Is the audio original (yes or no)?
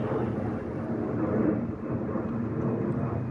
yes